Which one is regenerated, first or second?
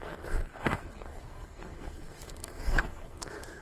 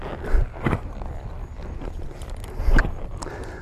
first